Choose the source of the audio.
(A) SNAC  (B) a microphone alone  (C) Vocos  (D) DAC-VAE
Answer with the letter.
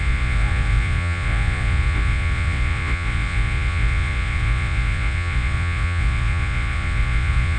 C